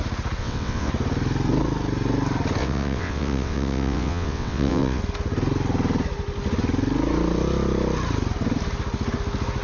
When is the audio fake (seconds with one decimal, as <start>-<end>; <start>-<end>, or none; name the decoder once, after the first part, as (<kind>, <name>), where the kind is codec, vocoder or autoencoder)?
0.4-0.9 (vocoder, WaveNeXt); 2.6-5.0